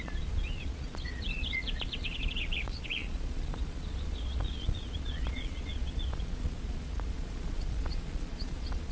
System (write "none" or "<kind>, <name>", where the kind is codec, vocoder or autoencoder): vocoder, Vocos